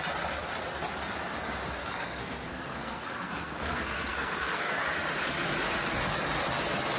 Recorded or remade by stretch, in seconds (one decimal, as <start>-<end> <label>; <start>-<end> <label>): 0.0-1.8 recorded; 1.8-4.8 remade; 4.8-7.0 recorded